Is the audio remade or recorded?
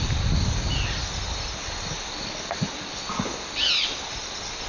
recorded